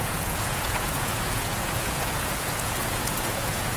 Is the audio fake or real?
fake